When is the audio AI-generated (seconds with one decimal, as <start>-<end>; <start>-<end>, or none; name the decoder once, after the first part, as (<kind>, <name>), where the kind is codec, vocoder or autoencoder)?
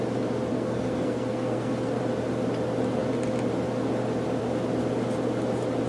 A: 0.5-2.0 (codec, SNAC)